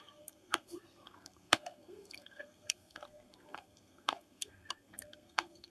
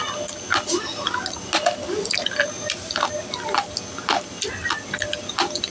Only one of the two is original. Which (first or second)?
second